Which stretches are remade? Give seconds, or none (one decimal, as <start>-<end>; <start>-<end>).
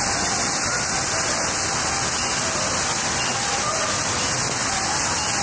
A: none